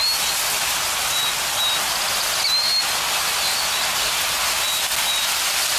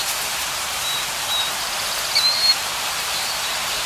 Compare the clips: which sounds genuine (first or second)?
first